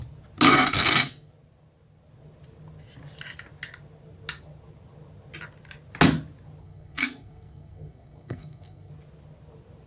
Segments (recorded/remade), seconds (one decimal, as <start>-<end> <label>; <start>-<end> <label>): 0.0-0.5 recorded; 0.5-1.3 remade; 1.3-6.6 recorded; 6.6-8.9 remade; 8.9-9.9 recorded